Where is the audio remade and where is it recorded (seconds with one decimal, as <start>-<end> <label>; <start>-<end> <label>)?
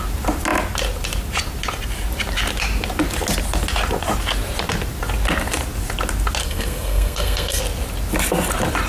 0.0-6.4 recorded; 6.4-7.6 remade; 7.6-8.9 recorded